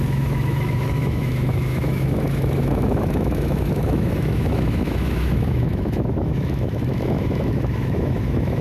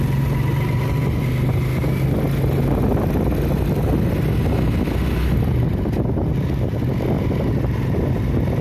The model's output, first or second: first